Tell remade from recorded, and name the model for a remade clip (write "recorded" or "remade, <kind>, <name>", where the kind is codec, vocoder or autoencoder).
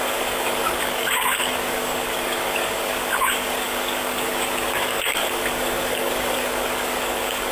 remade, codec, DAC